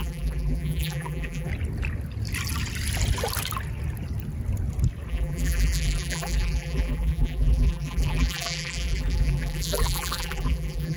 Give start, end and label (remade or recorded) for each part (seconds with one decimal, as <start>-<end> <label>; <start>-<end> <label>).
0.0-1.5 remade; 1.5-5.1 recorded; 5.1-11.0 remade

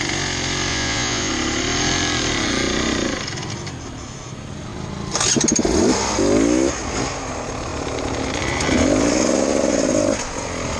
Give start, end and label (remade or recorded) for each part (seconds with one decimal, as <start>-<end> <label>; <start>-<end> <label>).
0.0-0.7 recorded; 0.7-1.3 remade; 1.3-10.8 recorded

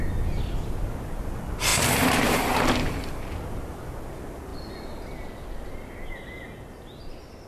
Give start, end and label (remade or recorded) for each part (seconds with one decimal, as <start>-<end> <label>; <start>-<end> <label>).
0.0-7.5 recorded